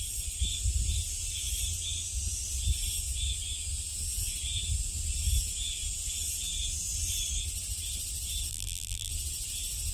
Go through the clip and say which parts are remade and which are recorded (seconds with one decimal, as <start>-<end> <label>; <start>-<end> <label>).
0.0-8.5 recorded; 8.5-9.1 remade; 9.1-9.9 recorded